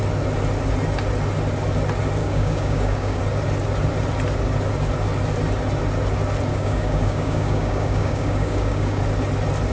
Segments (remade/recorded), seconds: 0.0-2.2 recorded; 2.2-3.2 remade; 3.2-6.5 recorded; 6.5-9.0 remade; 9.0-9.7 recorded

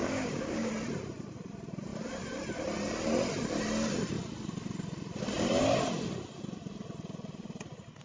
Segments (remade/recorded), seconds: 0.0-0.7 remade; 0.7-8.0 recorded

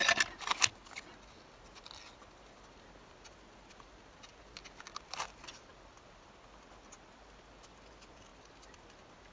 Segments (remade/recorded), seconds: 0.0-9.3 recorded

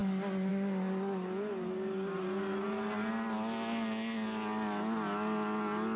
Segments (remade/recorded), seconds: 0.0-6.0 recorded

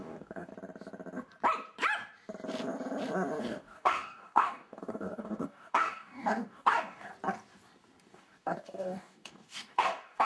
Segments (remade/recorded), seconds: 0.0-0.5 remade; 0.5-3.4 recorded; 3.4-7.1 remade; 7.1-8.0 recorded; 8.0-10.2 remade

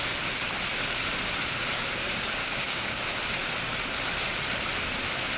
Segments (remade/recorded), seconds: 0.0-2.4 recorded; 2.4-3.0 remade; 3.0-5.4 recorded

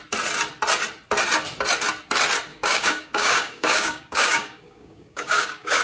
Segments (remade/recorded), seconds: 0.0-2.5 recorded; 2.5-5.8 remade

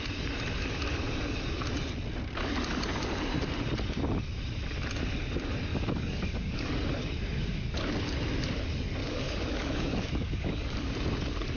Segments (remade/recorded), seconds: 0.0-5.7 recorded; 5.7-6.7 remade; 6.7-9.0 recorded; 9.0-10.9 remade; 10.9-11.6 recorded